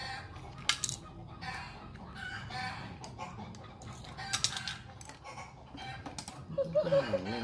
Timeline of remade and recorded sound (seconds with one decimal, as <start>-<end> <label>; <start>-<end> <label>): 0.0-7.4 recorded

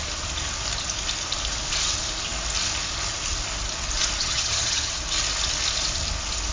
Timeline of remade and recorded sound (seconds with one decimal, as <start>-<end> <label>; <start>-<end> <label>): 0.0-4.2 recorded; 4.2-5.0 remade; 5.0-6.5 recorded

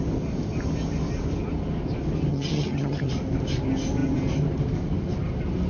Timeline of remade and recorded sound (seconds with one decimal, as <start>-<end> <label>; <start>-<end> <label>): 0.0-2.3 recorded; 2.3-3.1 remade; 3.1-5.7 recorded

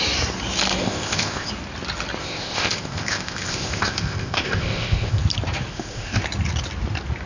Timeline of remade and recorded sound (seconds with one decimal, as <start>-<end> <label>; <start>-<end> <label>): 0.0-0.8 recorded; 0.8-1.5 remade; 1.5-2.2 recorded; 2.2-5.2 remade; 5.2-5.7 recorded; 5.7-6.2 remade; 6.2-7.3 recorded

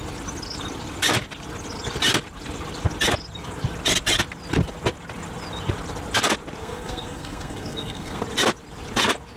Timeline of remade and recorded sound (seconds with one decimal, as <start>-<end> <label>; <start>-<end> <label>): 0.0-6.6 recorded; 6.6-8.2 remade; 8.2-9.4 recorded

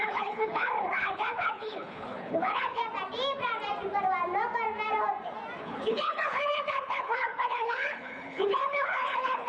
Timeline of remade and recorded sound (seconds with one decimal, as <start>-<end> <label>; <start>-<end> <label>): 0.0-2.8 remade; 2.8-5.6 recorded; 5.6-9.5 remade